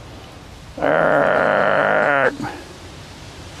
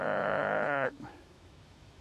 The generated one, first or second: second